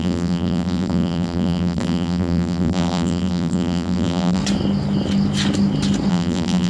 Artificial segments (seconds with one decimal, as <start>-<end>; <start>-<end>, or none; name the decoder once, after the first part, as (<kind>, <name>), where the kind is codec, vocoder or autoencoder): 0.0-4.4 (vocoder, BigVGAN v2); 6.1-6.7